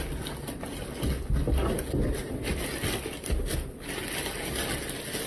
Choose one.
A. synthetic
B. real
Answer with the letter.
B